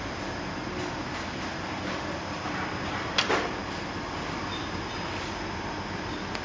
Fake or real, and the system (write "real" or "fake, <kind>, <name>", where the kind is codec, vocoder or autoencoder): real